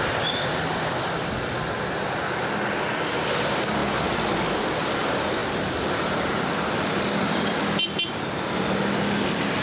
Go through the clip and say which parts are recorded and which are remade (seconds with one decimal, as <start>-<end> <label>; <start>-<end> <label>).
0.0-3.8 recorded; 3.8-4.9 remade; 4.9-5.4 recorded; 5.4-7.6 remade; 7.6-9.6 recorded